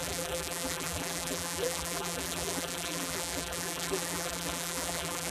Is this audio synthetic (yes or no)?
yes